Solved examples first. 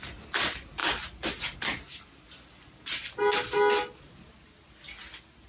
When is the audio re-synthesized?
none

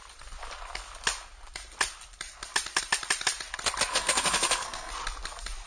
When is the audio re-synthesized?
3.9-4.9 (codec, SNAC)

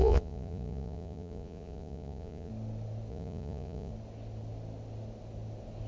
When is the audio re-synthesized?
0.0-2.5 (vocoder, Vocos); 3.1-3.9

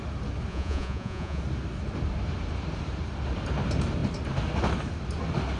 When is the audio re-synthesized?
0.5-1.4 (vocoder, Vocos)

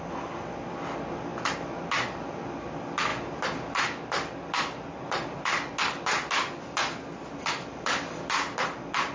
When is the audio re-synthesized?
none

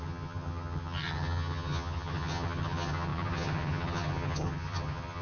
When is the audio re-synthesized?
0.0-5.2 (vocoder, HiFi-GAN)

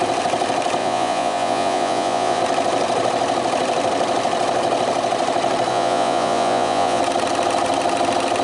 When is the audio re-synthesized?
0.8-2.4 (vocoder, Vocos); 5.7-7.0